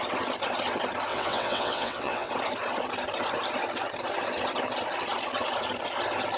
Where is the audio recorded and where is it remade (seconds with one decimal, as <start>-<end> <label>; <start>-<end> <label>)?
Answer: 0.0-1.1 recorded; 1.1-2.3 remade; 2.3-6.4 recorded